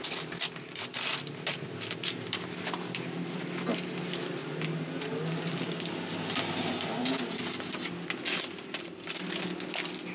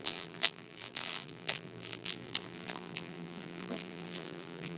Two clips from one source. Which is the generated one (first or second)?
second